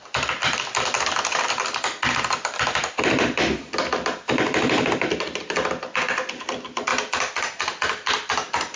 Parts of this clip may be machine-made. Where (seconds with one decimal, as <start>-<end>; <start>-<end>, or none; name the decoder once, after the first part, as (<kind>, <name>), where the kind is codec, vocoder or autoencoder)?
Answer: 0.0-8.8 (vocoder, BigVGAN v2)